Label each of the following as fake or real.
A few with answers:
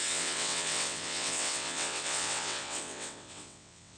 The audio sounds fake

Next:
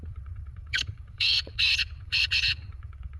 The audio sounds fake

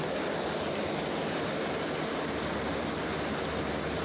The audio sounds real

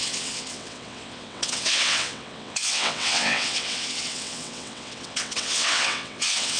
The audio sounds fake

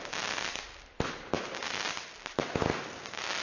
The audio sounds real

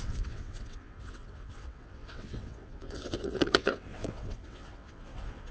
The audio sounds fake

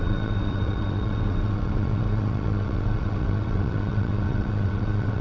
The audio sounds fake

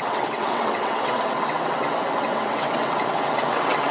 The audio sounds fake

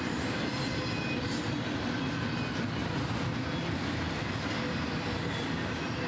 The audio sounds real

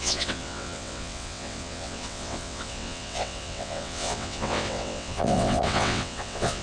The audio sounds fake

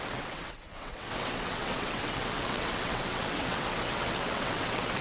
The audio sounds fake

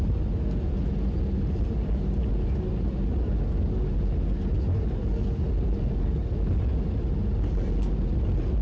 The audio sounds real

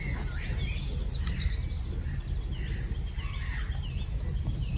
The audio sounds real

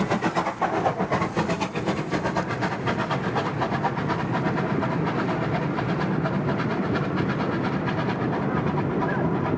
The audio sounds real